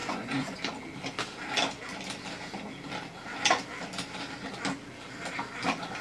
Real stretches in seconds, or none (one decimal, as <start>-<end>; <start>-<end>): 0.6-6.0